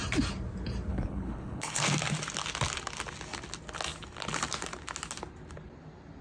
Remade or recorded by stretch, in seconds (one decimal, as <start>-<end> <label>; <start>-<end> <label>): 0.0-0.9 recorded; 0.9-1.8 remade; 1.8-6.2 recorded